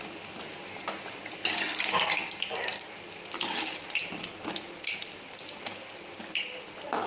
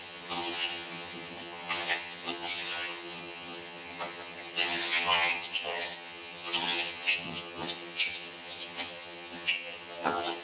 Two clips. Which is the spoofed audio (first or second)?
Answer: second